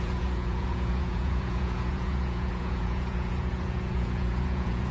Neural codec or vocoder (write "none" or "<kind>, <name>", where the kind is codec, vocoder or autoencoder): vocoder, Vocos